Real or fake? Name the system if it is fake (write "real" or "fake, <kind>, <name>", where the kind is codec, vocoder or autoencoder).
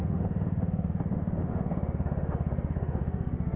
fake, autoencoder, DAC-VAE